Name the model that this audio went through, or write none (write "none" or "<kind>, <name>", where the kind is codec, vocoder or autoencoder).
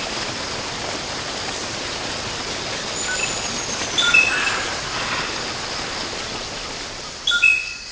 none